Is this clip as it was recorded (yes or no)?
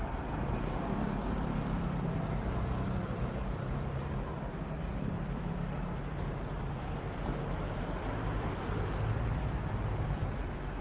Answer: no